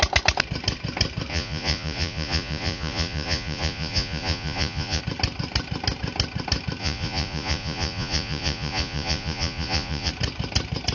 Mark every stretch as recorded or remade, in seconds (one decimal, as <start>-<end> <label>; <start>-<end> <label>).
0.0-1.3 recorded; 1.3-5.0 remade; 5.0-6.8 recorded; 6.8-10.1 remade; 10.1-10.9 recorded